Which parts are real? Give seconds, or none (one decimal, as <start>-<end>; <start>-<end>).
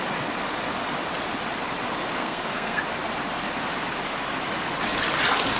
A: 0.0-2.2; 2.8-5.6